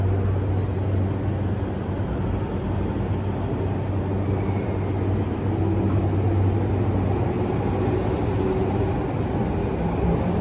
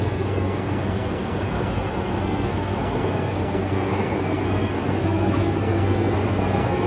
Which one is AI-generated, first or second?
second